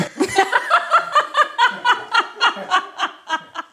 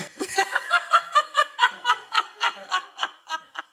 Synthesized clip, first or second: second